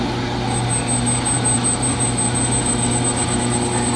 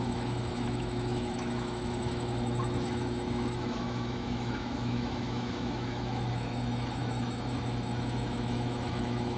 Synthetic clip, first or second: second